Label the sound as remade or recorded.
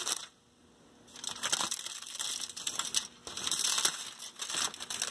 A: recorded